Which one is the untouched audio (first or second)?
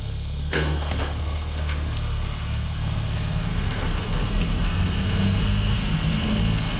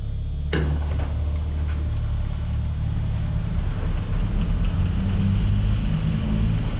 second